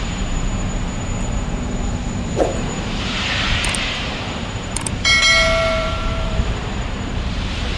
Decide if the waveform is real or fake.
fake